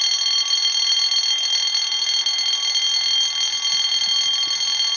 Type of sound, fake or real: real